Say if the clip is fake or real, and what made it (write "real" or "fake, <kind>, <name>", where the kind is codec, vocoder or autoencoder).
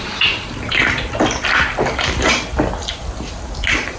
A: real